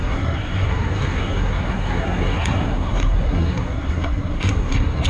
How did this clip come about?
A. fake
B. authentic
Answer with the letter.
A